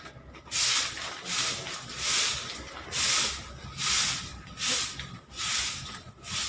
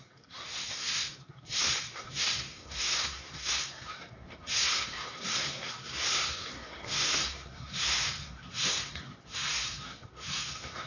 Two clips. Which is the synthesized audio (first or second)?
second